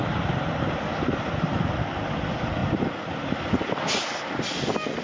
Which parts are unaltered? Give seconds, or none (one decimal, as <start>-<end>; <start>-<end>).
0.0-5.0